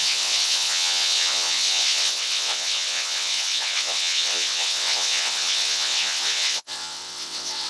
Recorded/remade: remade